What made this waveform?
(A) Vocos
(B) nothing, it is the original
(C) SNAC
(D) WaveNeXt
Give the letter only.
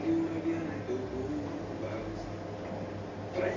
B